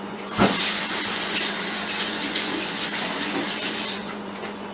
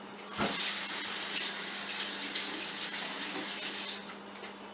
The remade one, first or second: first